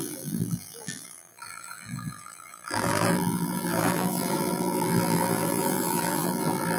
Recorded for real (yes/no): no